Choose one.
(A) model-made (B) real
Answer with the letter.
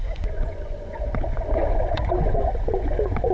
A